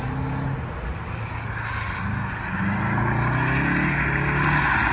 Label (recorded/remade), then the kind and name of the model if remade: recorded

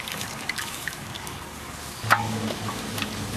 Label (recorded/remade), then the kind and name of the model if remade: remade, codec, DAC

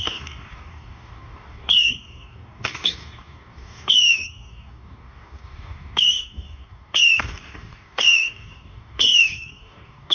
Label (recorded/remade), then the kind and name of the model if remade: remade, codec, DAC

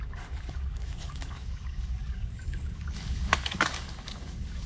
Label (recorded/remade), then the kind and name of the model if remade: remade, codec, DAC